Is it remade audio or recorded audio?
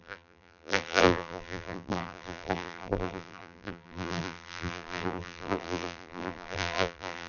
remade